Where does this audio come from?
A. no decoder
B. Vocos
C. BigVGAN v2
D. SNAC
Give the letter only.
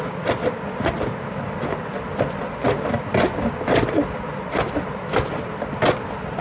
A